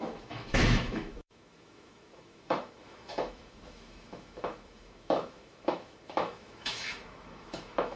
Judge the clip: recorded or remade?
remade